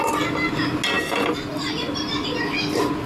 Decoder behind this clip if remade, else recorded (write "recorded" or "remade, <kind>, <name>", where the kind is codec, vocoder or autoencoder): recorded